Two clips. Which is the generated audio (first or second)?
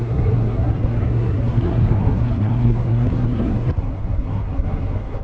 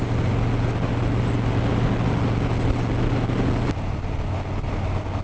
first